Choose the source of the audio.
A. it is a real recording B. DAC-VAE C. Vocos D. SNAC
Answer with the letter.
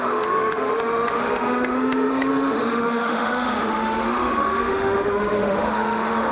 B